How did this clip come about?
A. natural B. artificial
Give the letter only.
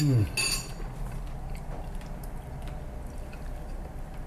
A